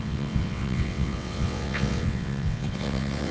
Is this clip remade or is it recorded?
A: remade